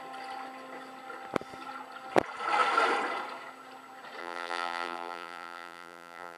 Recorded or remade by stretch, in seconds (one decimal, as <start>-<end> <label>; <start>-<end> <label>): 0.0-4.2 recorded; 4.2-6.4 remade